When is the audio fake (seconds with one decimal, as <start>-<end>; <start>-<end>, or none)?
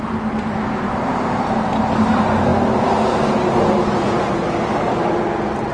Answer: none